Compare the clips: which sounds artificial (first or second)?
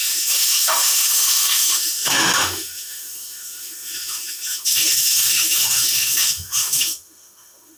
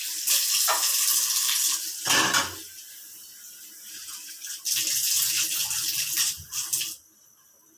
first